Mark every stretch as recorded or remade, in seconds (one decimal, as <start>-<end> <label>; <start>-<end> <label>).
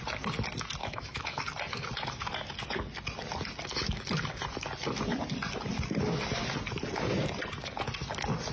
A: 0.0-0.8 recorded; 0.8-1.4 remade; 1.4-8.5 recorded